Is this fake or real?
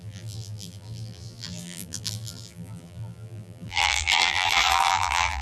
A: fake